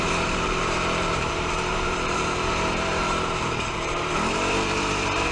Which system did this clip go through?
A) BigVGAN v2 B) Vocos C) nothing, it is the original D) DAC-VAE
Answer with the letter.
A